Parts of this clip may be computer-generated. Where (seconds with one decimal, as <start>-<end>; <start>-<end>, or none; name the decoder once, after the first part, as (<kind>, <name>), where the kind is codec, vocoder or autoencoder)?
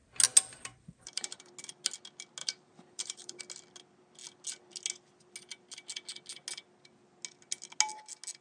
0.5-1.5 (vocoder, BigVGAN v2); 2.4-3.4